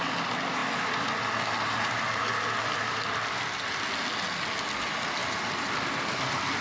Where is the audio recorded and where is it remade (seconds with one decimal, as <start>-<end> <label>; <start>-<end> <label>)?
0.0-5.2 recorded; 5.2-5.7 remade; 5.7-6.6 recorded